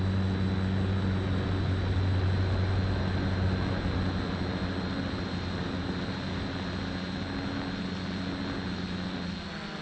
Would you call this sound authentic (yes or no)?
yes